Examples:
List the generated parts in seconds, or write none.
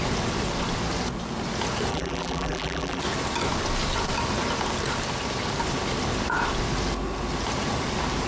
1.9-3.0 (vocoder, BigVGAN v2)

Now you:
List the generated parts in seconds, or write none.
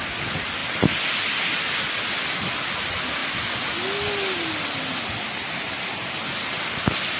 none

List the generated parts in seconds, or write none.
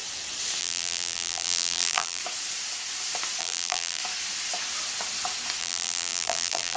0.6-2.2 (vocoder, BigVGAN v2); 3.4-4.0; 5.6-6.8